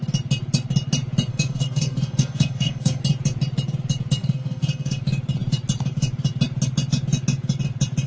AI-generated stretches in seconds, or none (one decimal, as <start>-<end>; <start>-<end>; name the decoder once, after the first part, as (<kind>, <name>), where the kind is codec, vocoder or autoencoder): 1.3-3.0 (codec, SNAC); 4.2-5.0

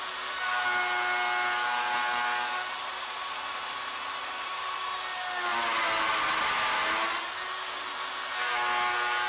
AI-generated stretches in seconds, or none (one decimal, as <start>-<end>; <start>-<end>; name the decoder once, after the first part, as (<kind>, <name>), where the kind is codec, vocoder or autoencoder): none